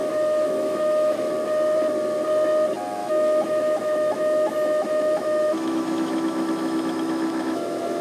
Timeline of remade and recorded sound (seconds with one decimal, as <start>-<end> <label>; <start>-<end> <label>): 0.0-1.3 remade; 1.3-3.0 recorded; 3.0-8.0 remade

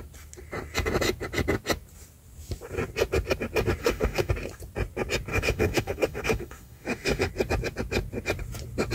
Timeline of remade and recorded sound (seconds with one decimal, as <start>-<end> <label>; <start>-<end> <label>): 0.0-3.8 recorded; 3.8-4.3 remade; 4.3-5.3 recorded; 5.3-7.3 remade; 7.3-8.9 recorded

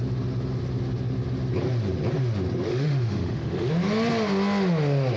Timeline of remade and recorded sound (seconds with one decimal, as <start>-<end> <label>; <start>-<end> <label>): 0.0-2.7 recorded; 2.7-3.7 remade; 3.7-5.2 recorded